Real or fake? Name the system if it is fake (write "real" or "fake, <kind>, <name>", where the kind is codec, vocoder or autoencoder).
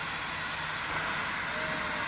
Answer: real